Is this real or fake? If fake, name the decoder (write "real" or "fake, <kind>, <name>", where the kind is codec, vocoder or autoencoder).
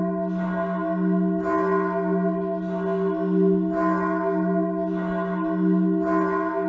real